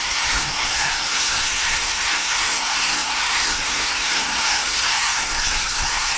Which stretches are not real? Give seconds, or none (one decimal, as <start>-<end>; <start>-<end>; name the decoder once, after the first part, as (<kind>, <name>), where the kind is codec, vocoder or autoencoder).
0.0-6.2 (codec, SNAC)